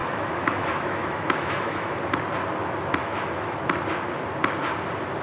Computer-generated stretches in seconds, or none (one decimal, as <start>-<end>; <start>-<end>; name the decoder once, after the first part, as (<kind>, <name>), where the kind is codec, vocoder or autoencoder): 0.0-2.0 (autoencoder, DAC-VAE); 3.0-3.6

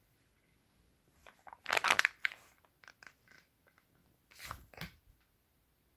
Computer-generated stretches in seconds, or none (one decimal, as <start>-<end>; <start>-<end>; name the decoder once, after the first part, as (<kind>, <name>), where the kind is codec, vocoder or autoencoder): none

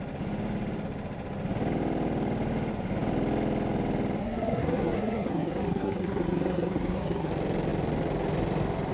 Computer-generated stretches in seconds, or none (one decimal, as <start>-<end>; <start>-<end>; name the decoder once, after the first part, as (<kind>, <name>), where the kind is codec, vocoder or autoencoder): 4.2-7.3 (codec, SNAC)

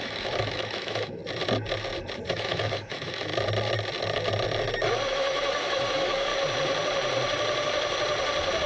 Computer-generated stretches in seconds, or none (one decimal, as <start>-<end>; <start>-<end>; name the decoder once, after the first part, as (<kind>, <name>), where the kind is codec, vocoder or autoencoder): 0.0-1.2 (autoencoder, DAC-VAE); 2.3-3.3; 5.1-6.3

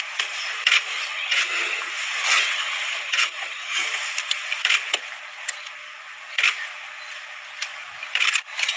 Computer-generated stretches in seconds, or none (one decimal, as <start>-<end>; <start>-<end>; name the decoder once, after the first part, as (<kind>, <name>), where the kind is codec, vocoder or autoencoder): 1.1-1.8 (vocoder, HiFi-GAN); 2.3-3.8

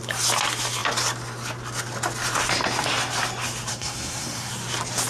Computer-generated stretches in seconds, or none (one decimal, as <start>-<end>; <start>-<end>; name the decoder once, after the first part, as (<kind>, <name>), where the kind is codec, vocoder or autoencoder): 3.7-4.5 (codec, SNAC)

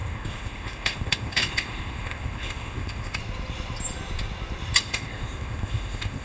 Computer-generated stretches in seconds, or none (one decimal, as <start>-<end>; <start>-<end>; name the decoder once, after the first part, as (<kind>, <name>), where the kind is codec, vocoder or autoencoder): 0.0-3.2 (codec, ZipCodec); 4.8-6.2

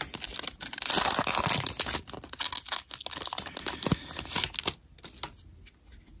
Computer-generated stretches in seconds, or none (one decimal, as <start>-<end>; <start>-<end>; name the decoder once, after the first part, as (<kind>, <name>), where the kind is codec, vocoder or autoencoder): none